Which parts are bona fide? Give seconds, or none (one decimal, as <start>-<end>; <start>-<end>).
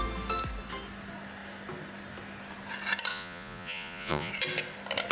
0.0-3.1; 4.3-5.1